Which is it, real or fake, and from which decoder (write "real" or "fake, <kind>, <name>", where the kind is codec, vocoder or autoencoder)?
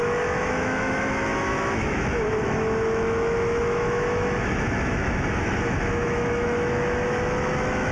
fake, autoencoder, DAC-VAE